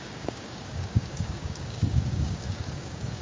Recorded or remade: remade